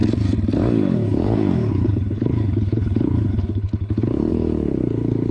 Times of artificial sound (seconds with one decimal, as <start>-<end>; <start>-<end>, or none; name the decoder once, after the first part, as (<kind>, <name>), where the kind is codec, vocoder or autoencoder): 0.7-5.3 (codec, HILCodec)